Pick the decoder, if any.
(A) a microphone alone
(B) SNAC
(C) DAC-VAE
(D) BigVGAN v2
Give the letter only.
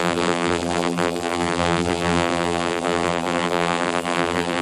D